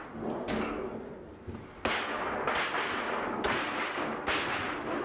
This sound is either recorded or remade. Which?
recorded